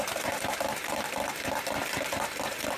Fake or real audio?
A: fake